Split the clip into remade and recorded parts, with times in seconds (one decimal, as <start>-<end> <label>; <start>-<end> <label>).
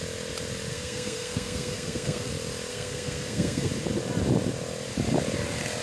0.0-0.7 recorded; 0.7-2.3 remade; 2.3-2.7 recorded; 2.7-3.7 remade; 3.7-5.8 recorded